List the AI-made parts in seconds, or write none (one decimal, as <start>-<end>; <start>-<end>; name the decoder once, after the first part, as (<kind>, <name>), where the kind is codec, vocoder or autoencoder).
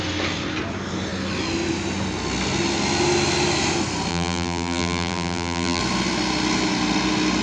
4.1-5.8 (vocoder, BigVGAN v2)